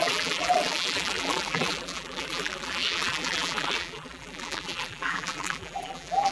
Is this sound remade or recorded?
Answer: remade